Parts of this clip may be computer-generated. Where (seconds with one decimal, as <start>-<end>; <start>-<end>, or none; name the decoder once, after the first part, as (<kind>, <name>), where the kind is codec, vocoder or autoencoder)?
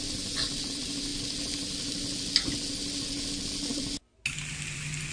none